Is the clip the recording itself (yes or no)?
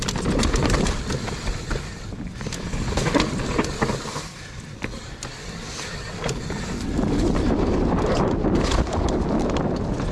yes